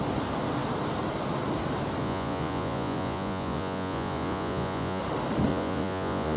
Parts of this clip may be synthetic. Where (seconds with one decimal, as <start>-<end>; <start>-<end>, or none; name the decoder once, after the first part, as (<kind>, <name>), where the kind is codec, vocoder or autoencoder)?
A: 2.0-5.0 (vocoder, Vocos); 5.5-6.4